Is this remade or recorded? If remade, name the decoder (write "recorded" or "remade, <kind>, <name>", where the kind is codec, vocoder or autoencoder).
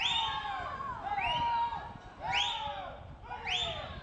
recorded